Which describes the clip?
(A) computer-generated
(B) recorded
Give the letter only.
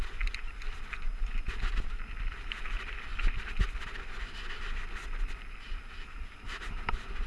B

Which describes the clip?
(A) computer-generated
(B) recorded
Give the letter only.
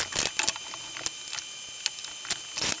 B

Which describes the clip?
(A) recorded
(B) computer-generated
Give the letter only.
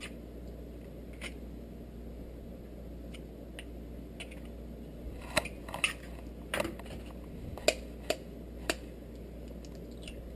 A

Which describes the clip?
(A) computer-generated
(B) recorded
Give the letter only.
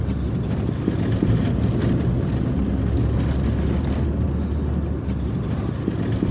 B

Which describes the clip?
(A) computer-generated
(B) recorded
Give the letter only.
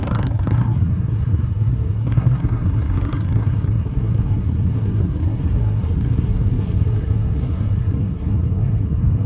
A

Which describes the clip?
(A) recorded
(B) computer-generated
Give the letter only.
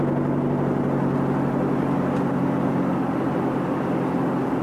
A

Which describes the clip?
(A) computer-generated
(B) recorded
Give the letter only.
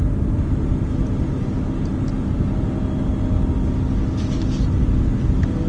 B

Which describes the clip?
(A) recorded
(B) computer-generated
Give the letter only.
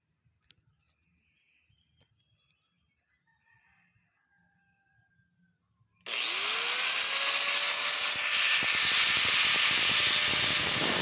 A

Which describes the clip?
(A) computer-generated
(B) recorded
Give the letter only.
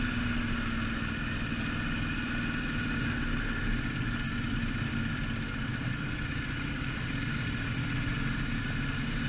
B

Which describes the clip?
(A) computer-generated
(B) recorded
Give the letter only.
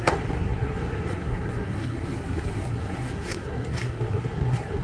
A